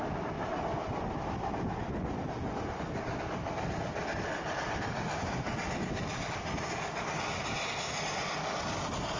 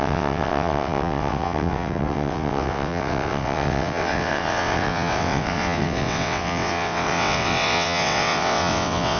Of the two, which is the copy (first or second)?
second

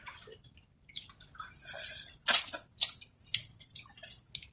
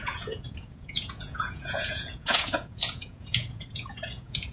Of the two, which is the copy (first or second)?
second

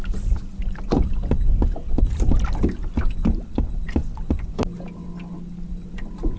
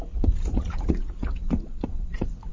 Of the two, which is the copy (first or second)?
second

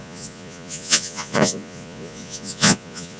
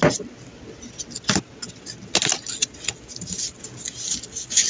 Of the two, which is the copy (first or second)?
first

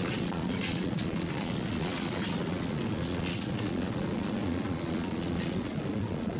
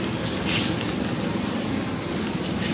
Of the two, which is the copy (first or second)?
first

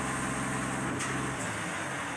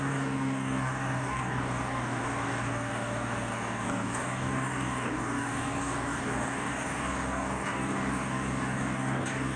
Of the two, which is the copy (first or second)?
second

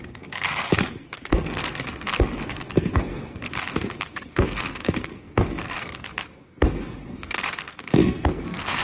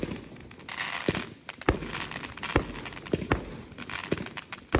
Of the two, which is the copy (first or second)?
first